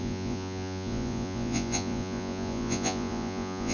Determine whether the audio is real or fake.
fake